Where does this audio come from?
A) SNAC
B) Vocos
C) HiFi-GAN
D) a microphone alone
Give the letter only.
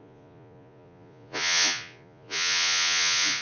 B